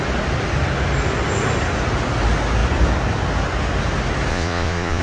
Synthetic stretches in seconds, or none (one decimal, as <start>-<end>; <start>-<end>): 4.3-5.0